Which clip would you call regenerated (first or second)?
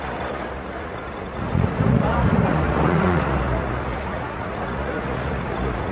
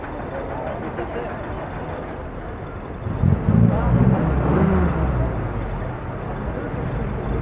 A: first